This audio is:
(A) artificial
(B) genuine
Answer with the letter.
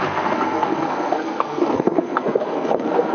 A